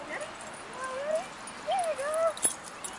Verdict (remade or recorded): recorded